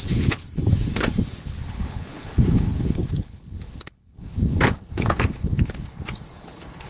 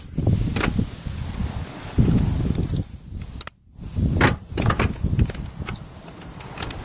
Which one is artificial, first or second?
first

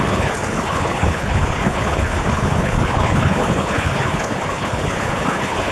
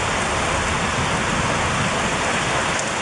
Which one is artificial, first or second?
first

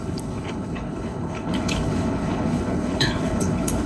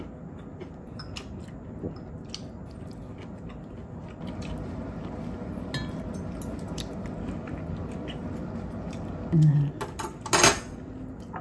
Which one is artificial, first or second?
first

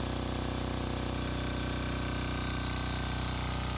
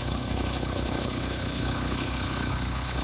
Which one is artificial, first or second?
second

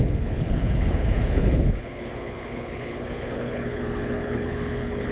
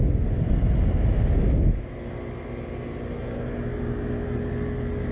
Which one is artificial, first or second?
first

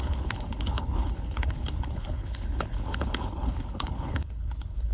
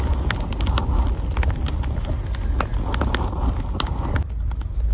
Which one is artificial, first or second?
first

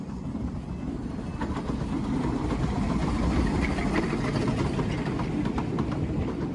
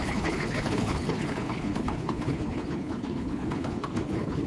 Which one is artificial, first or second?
second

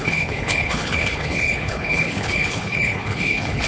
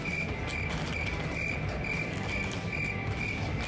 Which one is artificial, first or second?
first